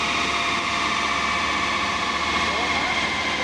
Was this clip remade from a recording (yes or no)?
no